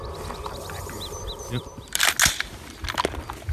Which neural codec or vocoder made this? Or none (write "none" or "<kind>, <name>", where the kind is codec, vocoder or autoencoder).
none